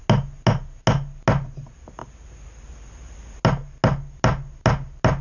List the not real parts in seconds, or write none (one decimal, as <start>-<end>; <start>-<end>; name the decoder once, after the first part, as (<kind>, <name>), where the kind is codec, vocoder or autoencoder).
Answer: none